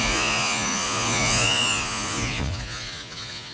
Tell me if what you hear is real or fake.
fake